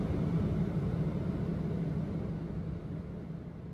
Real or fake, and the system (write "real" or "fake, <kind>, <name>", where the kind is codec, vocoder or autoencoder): real